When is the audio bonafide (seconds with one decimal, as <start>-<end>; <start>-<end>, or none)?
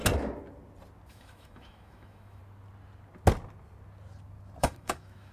0.0-1.1; 2.4-4.6